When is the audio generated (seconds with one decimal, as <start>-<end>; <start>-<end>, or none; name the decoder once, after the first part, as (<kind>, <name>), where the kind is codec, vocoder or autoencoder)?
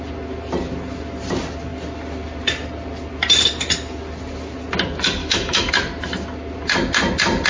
5.2-5.7 (autoencoder, DAC-VAE)